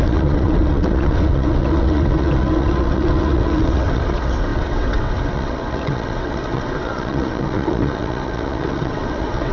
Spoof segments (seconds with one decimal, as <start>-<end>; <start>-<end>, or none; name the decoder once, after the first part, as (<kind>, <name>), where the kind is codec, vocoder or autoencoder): 0.0-9.5 (vocoder, WaveNeXt)